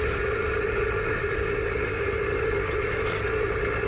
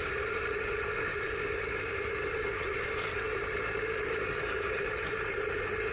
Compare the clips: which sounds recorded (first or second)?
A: first